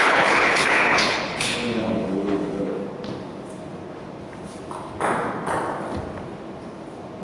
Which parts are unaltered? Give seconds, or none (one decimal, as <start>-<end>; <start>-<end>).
2.7-7.2